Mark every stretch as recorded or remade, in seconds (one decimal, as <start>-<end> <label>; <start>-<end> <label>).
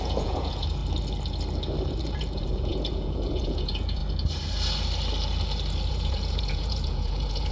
0.0-0.8 remade; 0.8-2.0 recorded; 2.0-4.0 remade; 4.0-5.9 recorded; 5.9-7.5 remade